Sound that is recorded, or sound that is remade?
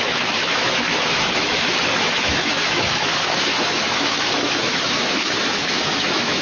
remade